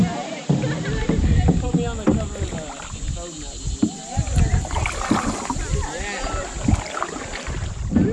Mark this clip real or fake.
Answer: real